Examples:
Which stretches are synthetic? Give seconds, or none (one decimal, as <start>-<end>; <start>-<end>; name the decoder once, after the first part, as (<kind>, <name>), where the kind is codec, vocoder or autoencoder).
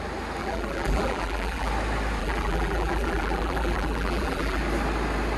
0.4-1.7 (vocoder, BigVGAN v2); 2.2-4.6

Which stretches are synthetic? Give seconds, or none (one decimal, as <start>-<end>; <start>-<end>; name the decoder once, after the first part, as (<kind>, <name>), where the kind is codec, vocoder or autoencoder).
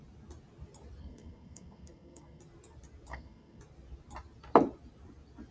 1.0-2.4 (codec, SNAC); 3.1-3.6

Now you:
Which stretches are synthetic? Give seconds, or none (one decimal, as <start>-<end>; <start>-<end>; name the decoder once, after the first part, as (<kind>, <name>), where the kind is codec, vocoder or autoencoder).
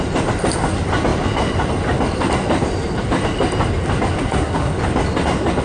4.2-4.7 (codec, SNAC)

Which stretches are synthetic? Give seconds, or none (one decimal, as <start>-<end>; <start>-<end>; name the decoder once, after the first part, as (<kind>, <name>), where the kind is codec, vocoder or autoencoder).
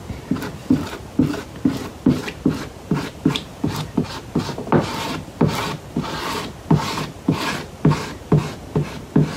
1.9-4.1 (vocoder, BigVGAN v2)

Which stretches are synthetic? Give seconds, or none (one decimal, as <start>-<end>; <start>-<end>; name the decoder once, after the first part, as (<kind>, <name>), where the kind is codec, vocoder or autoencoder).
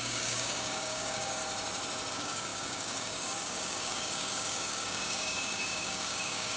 0.0-1.4 (codec, DAC); 2.1-6.6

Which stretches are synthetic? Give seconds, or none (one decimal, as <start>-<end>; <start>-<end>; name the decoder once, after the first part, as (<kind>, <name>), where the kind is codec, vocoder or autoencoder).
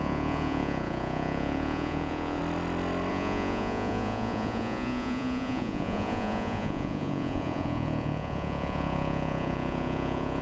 0.0-2.4 (vocoder, Vocos); 3.1-10.4